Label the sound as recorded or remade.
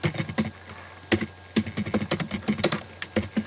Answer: recorded